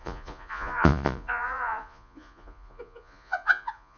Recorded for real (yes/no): no